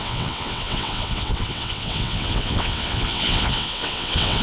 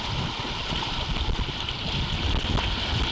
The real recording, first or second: second